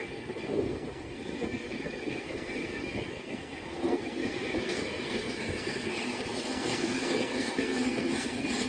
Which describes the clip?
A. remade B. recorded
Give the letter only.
A